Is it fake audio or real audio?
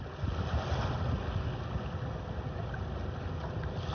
real